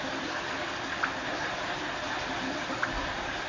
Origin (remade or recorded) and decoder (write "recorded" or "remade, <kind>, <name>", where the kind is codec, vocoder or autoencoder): recorded